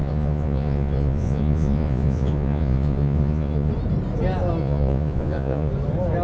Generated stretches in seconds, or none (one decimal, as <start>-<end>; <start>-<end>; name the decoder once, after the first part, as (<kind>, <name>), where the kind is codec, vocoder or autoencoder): 0.0-3.7 (vocoder, Vocos); 4.6-5.7